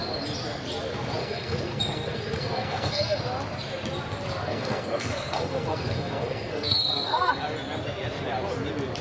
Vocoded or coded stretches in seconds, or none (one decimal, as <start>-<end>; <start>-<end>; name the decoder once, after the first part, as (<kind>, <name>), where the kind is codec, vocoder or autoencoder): 1.2-3.2 (codec, SNAC); 4.4-7.3